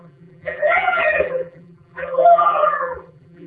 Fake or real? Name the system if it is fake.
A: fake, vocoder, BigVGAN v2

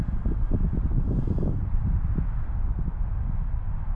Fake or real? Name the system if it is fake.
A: real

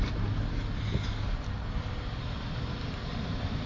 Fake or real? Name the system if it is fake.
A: real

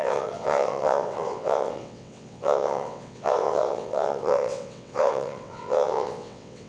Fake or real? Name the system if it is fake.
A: fake, vocoder, WaveNeXt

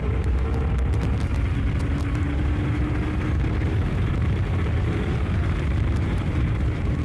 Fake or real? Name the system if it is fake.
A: fake, vocoder, BigVGAN v2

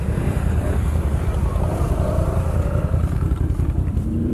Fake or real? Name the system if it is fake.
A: fake, vocoder, BigVGAN v2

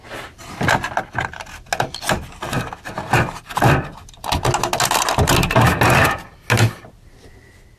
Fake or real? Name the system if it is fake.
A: real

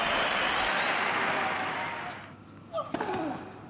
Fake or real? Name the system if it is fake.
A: real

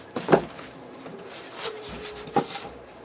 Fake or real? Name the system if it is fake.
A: fake, vocoder, BigVGAN v2